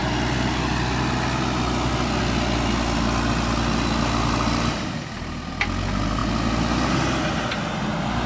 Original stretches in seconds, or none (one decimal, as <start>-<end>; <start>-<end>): 0.0-8.3